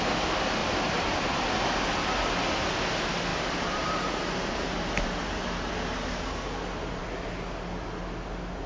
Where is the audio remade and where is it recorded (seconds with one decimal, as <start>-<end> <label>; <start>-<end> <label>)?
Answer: 0.0-0.6 recorded; 0.6-1.4 remade; 1.4-3.3 recorded; 3.3-5.7 remade; 5.7-8.7 recorded